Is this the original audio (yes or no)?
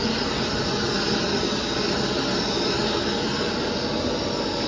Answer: yes